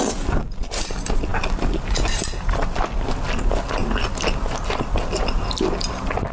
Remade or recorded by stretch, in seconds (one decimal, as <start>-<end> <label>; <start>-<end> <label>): 0.0-6.3 recorded